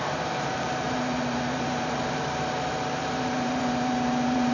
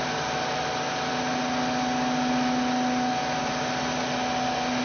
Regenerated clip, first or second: first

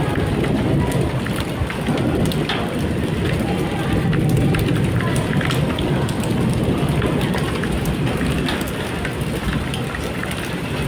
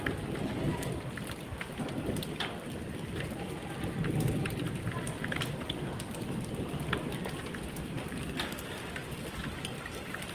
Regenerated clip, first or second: second